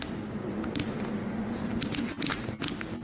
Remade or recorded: recorded